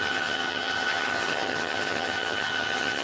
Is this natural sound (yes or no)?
no